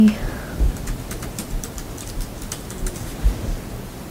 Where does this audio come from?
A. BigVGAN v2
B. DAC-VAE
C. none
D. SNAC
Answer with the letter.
C